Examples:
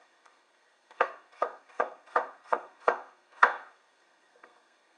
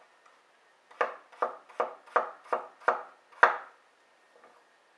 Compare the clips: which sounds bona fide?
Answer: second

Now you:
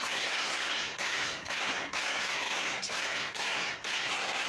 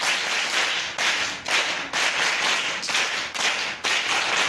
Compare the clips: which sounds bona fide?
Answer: second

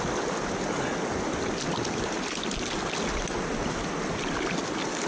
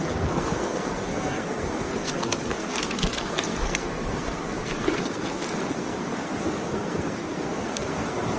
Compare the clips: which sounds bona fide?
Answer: first